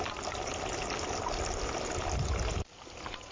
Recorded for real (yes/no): yes